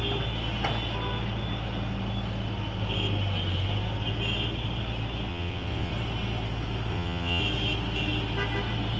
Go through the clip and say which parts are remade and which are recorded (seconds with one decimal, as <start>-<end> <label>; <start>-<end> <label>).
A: 0.0-5.3 recorded; 5.3-5.9 remade; 5.9-6.9 recorded; 6.9-7.4 remade; 7.4-9.0 recorded